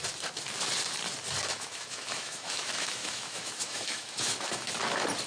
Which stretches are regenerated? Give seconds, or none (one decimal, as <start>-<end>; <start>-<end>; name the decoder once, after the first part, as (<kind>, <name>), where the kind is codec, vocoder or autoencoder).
1.5-4.7 (autoencoder, DAC-VAE)